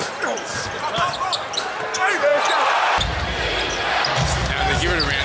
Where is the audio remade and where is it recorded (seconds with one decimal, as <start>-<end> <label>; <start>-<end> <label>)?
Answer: 0.0-5.2 recorded